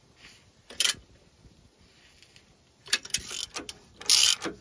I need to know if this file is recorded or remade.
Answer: recorded